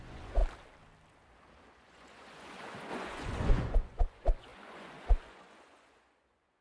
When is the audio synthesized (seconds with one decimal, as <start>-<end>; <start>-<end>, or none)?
0.0-0.4; 1.7-6.6